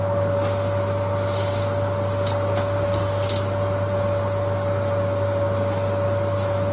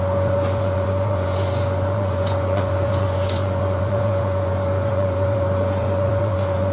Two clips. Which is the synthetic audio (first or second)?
second